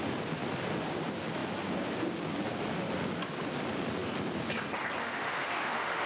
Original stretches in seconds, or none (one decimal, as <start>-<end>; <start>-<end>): 0.0-5.0